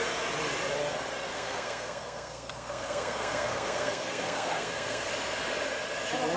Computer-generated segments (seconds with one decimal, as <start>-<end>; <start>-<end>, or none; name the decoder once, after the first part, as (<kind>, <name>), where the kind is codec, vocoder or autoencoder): 1.3-5.1 (codec, SNAC)